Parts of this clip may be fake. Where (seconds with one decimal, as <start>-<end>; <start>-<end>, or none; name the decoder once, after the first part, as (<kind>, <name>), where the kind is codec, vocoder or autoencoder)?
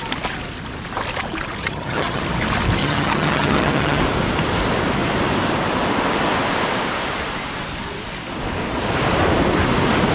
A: 1.6-2.2 (vocoder, HiFi-GAN); 2.8-4.0